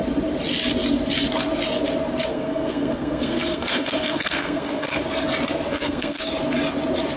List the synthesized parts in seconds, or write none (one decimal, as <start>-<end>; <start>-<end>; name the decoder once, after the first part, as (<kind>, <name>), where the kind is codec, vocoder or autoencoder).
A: 2.3-5.0 (codec, SNAC); 5.7-6.3